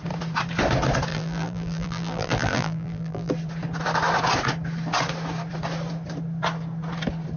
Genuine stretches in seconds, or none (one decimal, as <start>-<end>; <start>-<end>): 0.0-1.1; 3.3-7.4